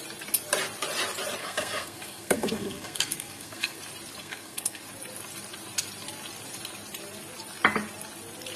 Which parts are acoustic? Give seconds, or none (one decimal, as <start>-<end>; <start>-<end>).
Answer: 0.0-1.4; 3.8-4.2; 4.8-8.6